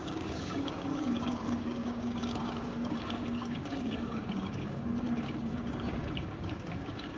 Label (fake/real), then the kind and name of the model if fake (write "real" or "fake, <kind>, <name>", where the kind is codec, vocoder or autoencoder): fake, codec, DAC